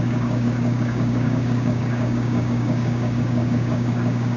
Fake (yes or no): yes